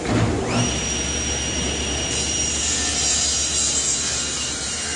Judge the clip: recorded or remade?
remade